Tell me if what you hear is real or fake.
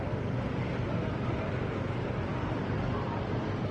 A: real